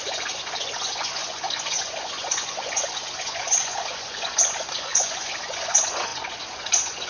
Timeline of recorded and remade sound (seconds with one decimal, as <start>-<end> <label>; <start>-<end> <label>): 0.0-7.1 remade